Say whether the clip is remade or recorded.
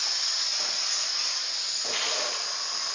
recorded